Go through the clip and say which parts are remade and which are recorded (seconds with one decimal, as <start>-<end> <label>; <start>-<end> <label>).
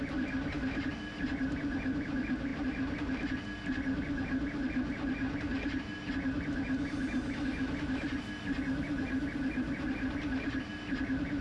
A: 0.0-11.4 recorded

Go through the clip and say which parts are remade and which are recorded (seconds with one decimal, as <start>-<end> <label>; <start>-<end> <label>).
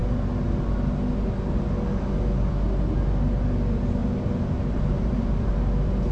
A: 0.0-4.0 recorded; 4.0-5.5 remade; 5.5-6.1 recorded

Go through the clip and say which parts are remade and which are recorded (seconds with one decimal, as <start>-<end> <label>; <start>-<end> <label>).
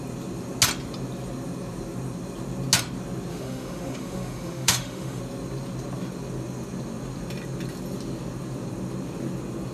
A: 0.0-3.3 recorded; 3.3-5.2 remade; 5.2-9.7 recorded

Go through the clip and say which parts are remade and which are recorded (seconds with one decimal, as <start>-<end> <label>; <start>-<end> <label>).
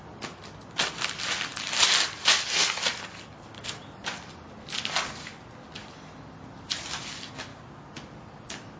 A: 0.0-8.8 recorded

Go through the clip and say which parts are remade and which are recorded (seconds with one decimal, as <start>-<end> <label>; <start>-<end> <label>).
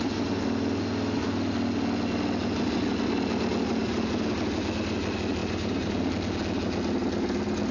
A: 0.0-5.4 recorded; 5.4-5.9 remade; 5.9-7.7 recorded